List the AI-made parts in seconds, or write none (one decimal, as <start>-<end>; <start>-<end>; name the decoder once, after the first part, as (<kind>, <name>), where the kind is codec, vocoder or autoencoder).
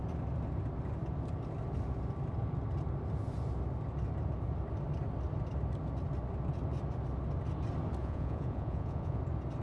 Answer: 8.0-9.2 (vocoder, Vocos)